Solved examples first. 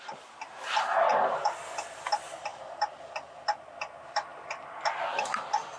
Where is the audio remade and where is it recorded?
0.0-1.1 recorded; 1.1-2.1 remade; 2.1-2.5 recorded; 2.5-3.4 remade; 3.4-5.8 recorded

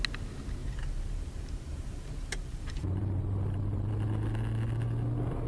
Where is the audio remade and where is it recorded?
0.0-0.6 recorded; 0.6-3.9 remade; 3.9-5.5 recorded